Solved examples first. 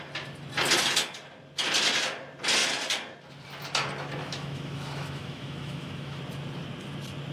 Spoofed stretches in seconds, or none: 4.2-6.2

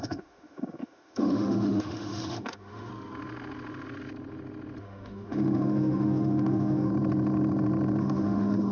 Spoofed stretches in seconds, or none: 0.0-2.9; 4.8-6.9; 8.0-8.7

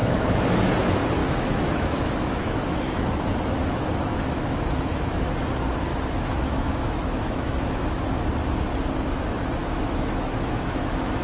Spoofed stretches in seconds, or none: 0.0-0.6; 1.2-5.2; 5.9-8.1; 9.6-11.2

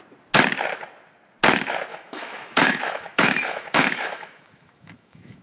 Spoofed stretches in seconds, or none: 1.9-5.4

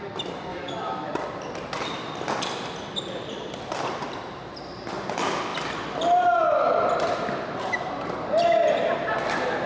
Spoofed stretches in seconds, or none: 0.5-1.1

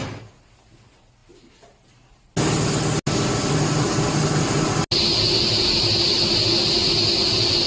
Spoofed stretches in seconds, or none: none

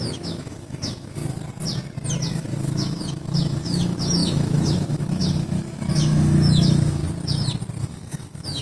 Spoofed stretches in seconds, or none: 0.0-1.2; 2.3-7.0; 7.8-8.6

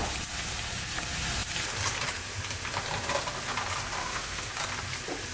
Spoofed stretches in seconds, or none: 4.0-4.5